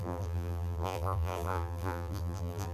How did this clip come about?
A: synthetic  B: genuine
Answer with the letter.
A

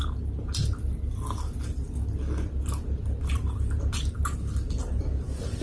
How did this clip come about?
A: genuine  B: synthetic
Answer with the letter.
A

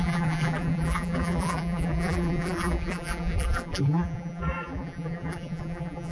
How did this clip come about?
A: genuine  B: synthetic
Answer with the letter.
B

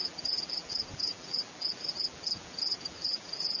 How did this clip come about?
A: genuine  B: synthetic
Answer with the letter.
B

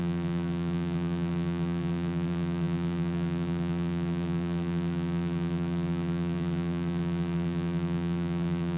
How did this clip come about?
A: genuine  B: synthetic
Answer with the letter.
B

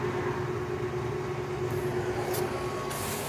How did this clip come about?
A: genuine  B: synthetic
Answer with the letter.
A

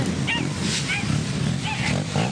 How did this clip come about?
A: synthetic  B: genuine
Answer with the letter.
B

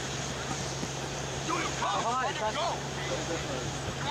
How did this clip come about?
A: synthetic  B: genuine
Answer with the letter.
A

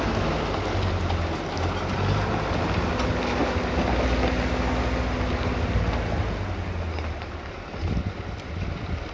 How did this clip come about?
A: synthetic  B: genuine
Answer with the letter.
B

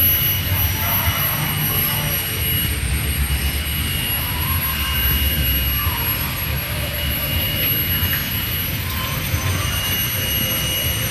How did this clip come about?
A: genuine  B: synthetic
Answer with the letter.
A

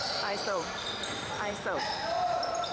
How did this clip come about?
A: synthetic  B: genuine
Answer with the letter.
A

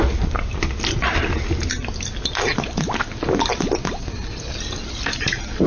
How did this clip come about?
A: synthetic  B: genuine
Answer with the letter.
B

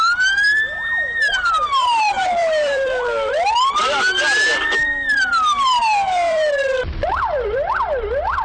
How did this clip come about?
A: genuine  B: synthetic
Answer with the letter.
B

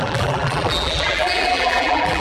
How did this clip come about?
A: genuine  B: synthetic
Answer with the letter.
B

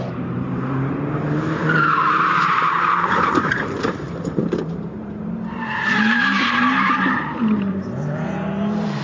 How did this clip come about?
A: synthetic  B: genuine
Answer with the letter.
A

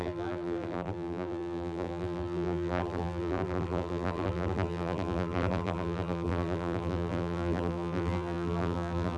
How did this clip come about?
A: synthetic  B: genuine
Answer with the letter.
A